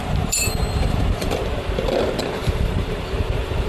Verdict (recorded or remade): remade